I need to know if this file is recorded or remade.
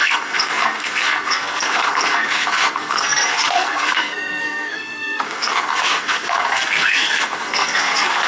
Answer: remade